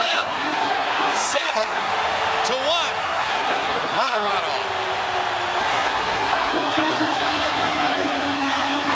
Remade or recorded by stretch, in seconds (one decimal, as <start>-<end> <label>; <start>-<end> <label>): 0.0-1.9 remade; 1.9-3.0 recorded; 3.0-4.3 remade; 4.3-5.6 recorded; 5.6-8.9 remade